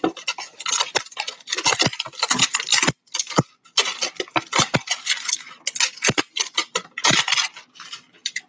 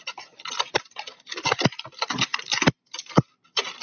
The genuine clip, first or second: first